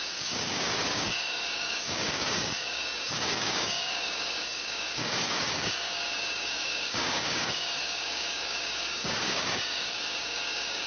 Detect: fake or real fake